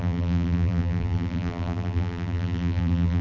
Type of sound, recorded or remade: remade